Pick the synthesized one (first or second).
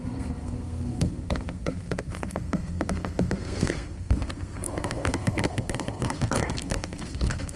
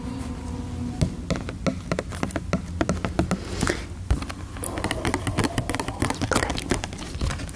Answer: first